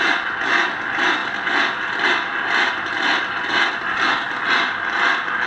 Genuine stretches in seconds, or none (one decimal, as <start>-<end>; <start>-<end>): 0.0-5.5